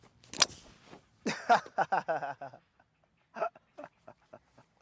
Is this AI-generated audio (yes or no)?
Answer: no